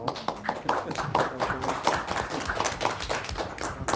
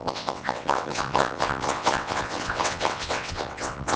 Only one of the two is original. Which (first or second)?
first